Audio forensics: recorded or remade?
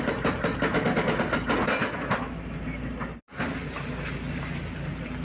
recorded